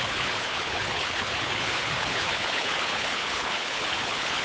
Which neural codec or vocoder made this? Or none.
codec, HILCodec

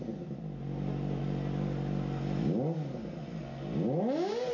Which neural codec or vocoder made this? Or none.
none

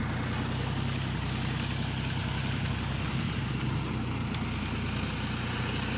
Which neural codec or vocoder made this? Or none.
none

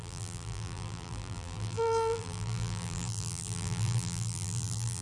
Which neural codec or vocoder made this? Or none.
vocoder, BigVGAN v2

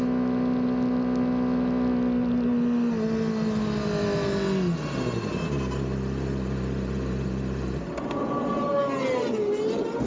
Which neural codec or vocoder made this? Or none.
none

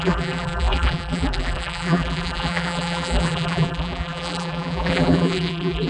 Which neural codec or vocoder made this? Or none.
vocoder, BigVGAN v2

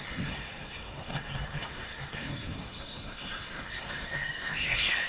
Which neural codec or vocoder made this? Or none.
codec, SNAC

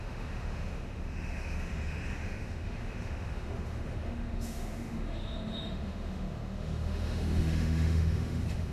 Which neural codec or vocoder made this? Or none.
autoencoder, DAC-VAE